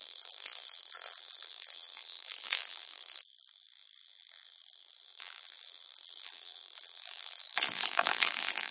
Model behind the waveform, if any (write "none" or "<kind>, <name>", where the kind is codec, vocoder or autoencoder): vocoder, BigVGAN v2